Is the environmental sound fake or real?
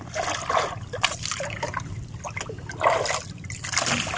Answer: real